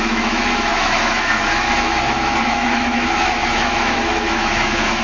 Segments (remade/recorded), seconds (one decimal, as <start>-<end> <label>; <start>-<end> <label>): 0.0-5.0 remade